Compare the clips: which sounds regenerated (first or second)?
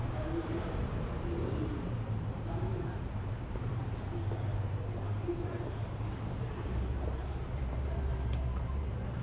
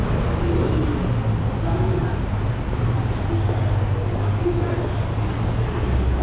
first